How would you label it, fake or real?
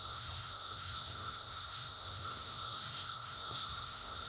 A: fake